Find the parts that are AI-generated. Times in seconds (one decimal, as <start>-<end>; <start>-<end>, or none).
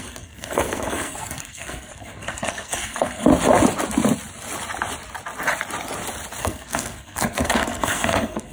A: 0.0-3.3; 6.4-8.5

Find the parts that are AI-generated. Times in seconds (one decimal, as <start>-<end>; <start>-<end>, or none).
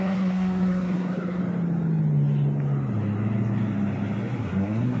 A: 0.0-1.4; 4.4-5.0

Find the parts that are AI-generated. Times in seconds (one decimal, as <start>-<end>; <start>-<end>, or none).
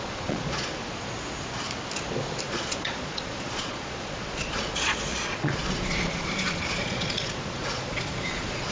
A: 0.0-0.8; 2.4-8.7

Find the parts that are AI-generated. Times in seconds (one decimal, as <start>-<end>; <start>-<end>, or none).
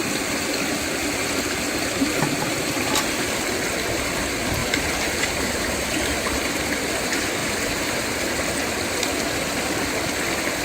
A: 4.6-6.6; 7.4-8.3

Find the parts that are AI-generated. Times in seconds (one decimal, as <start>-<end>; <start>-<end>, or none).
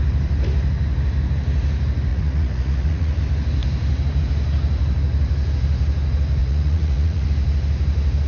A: 2.1-3.2; 6.4-7.3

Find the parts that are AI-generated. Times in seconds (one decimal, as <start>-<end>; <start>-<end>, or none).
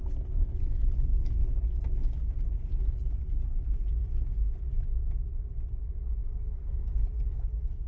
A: none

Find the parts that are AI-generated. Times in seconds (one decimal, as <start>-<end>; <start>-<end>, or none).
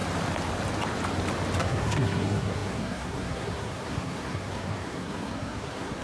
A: 1.6-6.0